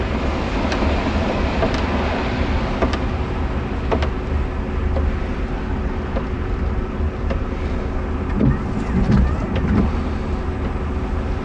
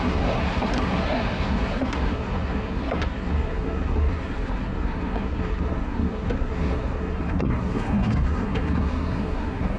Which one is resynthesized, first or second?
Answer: second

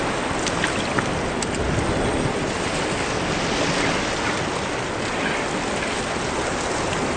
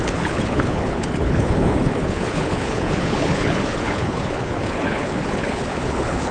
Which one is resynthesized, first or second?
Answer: second